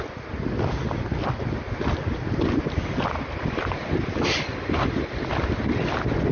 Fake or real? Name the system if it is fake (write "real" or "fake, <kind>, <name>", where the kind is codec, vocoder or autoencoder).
real